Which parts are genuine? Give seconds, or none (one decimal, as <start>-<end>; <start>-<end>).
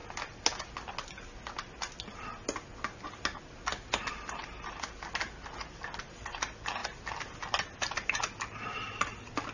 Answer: 0.0-9.5